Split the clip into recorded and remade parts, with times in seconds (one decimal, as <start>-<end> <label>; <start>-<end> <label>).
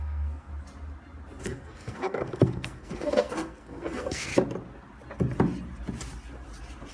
0.0-0.5 remade; 0.5-1.4 recorded; 1.4-4.3 remade; 4.3-6.9 recorded